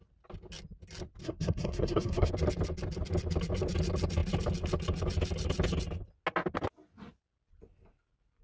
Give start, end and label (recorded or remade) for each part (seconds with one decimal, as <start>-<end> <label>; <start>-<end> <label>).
0.0-1.2 recorded; 1.2-2.3 remade; 2.3-8.4 recorded